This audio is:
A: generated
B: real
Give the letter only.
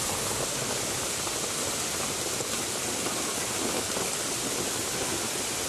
A